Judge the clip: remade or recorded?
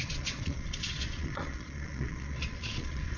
remade